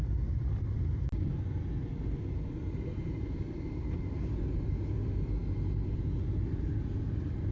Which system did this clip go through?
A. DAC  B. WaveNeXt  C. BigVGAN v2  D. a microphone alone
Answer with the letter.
D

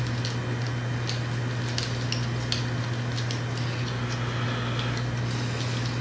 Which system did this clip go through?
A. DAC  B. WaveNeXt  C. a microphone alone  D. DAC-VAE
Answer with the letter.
C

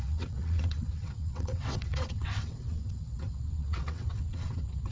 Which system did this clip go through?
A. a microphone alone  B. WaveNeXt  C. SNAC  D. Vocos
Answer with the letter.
B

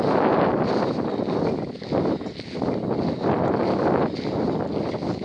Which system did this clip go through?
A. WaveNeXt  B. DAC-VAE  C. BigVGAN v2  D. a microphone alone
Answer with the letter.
D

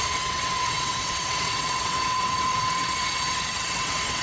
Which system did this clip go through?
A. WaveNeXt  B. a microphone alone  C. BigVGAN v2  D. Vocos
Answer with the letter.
A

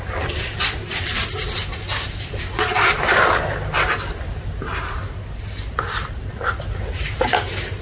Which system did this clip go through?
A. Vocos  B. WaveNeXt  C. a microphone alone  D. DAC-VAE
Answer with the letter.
C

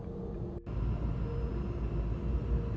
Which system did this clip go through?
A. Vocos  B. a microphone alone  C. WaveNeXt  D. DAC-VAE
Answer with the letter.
B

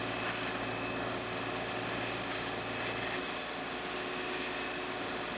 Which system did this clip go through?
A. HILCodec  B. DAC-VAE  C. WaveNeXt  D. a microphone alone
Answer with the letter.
D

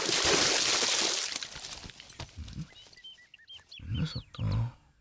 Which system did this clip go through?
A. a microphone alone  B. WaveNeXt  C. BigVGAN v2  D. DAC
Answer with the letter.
A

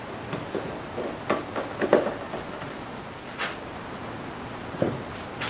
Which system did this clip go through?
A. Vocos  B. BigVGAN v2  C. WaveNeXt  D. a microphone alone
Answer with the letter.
D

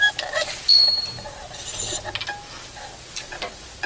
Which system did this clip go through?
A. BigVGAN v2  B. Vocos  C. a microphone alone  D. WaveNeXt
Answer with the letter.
C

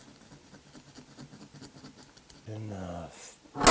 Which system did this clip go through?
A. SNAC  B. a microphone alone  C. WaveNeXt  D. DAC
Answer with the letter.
B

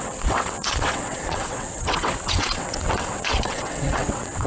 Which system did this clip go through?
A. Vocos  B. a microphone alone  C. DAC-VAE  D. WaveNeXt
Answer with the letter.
D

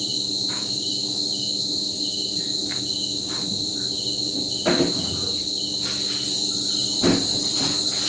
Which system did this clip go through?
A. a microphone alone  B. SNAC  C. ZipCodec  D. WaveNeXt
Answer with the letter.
A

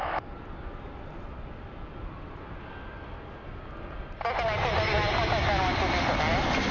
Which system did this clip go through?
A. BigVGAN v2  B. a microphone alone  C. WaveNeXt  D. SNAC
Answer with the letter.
B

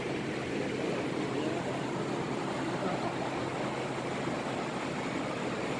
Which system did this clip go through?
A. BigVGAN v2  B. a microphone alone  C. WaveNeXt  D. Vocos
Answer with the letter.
B